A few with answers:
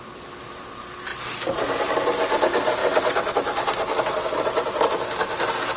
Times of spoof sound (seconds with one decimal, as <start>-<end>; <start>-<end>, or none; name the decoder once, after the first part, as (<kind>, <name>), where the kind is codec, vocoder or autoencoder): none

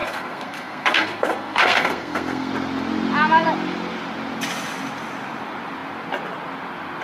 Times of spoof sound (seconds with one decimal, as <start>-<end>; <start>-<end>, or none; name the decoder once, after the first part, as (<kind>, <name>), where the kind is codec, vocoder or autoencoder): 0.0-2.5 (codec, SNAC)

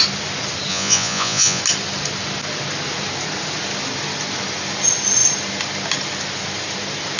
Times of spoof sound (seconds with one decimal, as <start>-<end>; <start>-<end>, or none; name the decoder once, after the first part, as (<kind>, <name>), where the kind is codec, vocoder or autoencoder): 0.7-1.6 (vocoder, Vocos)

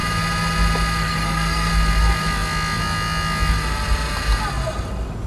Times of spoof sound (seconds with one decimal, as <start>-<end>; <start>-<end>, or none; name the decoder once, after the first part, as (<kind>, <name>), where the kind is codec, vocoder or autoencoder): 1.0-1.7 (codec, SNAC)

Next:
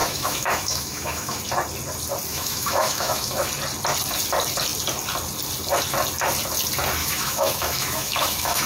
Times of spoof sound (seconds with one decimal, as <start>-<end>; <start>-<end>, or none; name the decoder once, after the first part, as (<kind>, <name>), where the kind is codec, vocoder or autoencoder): 0.0-1.4 (autoencoder, DAC-VAE); 2.3-3.5; 7.0-8.7

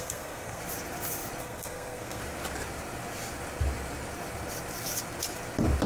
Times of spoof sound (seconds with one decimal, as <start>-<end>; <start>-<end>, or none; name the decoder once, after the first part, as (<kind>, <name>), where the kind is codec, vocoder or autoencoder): 0.0-0.6 (codec, SNAC); 1.4-2.2

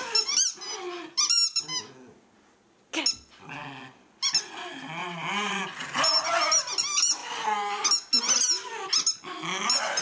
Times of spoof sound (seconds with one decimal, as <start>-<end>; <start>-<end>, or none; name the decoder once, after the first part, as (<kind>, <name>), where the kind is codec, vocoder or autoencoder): 5.0-5.6 (vocoder, BigVGAN v2)

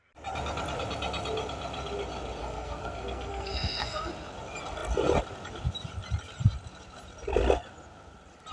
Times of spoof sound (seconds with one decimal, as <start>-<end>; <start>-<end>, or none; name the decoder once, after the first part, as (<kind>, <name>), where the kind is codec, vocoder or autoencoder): 2.4-4.1 (codec, SNAC)